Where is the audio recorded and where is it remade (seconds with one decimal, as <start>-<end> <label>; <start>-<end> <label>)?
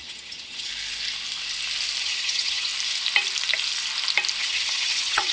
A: 0.0-0.7 remade; 0.7-2.0 recorded; 2.0-2.7 remade; 2.7-4.4 recorded; 4.4-5.3 remade